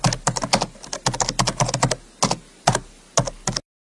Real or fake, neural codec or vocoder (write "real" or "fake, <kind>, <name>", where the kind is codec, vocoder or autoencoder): real